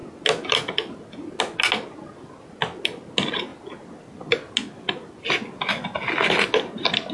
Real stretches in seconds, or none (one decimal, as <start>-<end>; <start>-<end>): 0.0-7.1